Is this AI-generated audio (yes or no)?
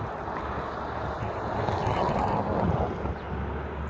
no